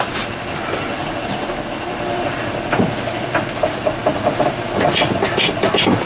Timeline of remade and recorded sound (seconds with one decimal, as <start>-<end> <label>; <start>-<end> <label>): 0.0-6.1 recorded